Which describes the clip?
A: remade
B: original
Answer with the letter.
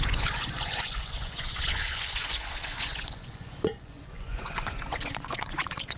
A